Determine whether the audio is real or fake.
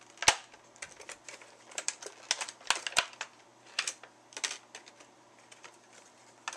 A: real